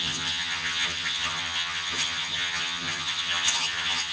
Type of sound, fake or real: fake